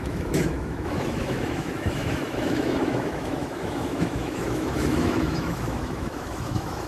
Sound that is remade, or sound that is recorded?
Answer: remade